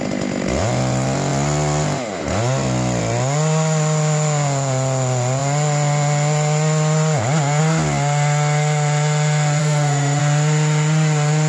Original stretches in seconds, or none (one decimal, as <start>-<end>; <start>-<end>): 0.0-9.6; 10.2-11.5